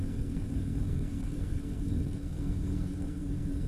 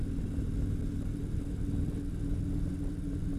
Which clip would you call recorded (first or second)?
second